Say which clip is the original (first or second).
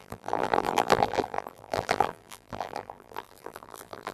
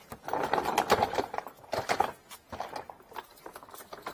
second